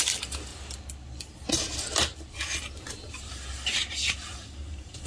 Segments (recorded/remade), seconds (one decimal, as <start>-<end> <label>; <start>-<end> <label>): 0.0-0.5 remade; 0.5-3.1 recorded; 3.1-5.1 remade